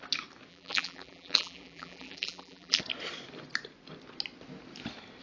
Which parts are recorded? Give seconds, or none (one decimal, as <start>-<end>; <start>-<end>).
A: 0.0-0.5; 2.8-5.2